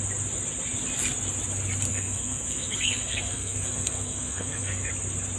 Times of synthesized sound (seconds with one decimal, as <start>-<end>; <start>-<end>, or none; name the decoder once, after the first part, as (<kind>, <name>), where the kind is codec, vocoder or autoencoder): 1.9-4.9 (codec, SNAC)